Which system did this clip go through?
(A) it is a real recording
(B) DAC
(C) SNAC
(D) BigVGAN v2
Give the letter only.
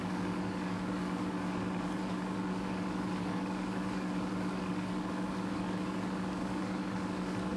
B